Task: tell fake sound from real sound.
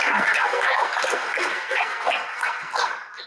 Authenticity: fake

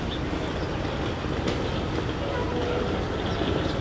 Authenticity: real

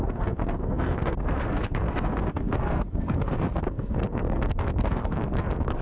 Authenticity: fake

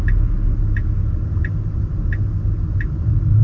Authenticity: real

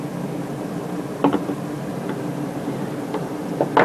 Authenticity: real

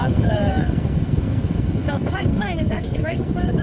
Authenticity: fake